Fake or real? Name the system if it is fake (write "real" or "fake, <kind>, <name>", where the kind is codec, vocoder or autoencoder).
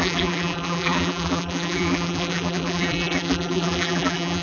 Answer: fake, vocoder, BigVGAN v2